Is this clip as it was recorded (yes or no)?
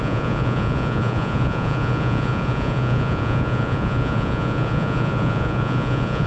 no